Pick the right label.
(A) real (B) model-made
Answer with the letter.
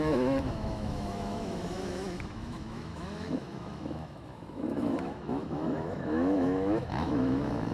B